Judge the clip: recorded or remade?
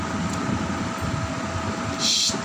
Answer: recorded